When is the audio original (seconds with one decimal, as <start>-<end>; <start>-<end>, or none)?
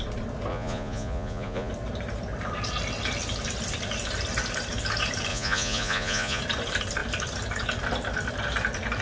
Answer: 0.0-0.5; 1.7-5.3; 6.4-9.0